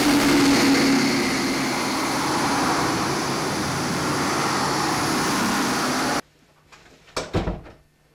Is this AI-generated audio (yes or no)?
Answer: no